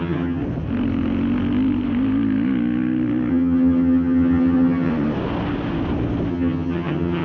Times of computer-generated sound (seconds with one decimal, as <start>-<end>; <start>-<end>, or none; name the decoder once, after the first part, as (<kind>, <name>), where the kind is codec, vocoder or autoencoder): 0.0-0.4 (vocoder, HiFi-GAN); 3.3-4.9; 6.3-7.2